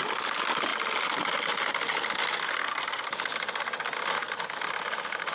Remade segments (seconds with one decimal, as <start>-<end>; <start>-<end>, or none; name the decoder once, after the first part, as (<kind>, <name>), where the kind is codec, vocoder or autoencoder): 2.4-3.1 (codec, SNAC)